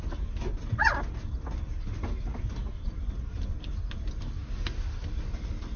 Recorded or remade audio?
recorded